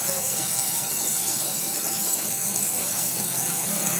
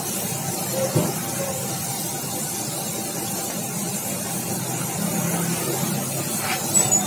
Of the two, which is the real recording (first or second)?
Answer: second